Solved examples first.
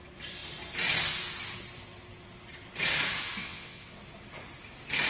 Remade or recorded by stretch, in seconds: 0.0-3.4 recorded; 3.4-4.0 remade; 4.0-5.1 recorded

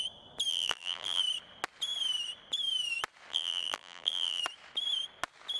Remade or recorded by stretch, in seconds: 0.0-0.5 recorded; 0.5-1.2 remade; 1.2-3.3 recorded; 3.3-4.4 remade; 4.4-5.6 recorded